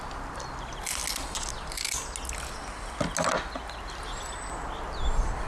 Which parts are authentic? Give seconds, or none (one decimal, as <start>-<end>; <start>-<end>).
0.0-5.5